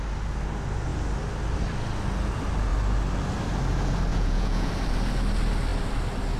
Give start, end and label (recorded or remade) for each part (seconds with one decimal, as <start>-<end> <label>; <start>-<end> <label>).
0.0-4.1 recorded; 4.1-4.7 remade; 4.7-6.4 recorded